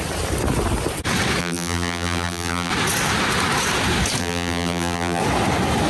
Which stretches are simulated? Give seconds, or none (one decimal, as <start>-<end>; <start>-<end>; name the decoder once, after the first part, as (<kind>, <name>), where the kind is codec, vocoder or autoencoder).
1.4-2.7 (vocoder, BigVGAN v2); 4.2-5.2